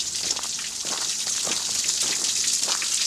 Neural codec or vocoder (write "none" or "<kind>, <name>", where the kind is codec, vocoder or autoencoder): none